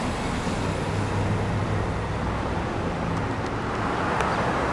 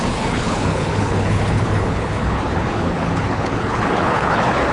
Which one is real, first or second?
first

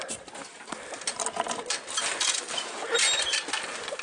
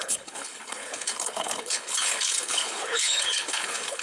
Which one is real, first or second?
first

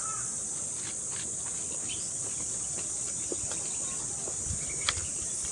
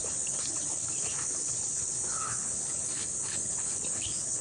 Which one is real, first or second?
first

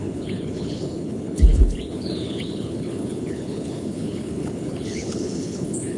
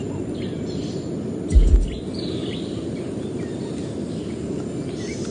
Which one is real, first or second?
second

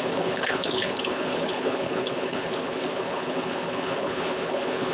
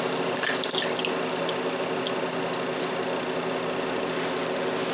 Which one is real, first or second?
second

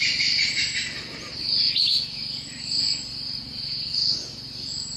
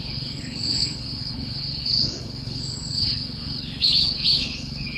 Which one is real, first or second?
first